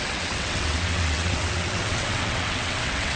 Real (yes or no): no